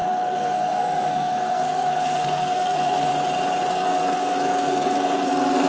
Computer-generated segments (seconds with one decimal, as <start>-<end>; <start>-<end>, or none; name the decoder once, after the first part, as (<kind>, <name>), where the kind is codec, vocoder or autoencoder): 0.0-3.1 (codec, SNAC); 3.7-5.7